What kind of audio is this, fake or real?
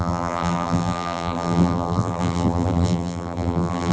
fake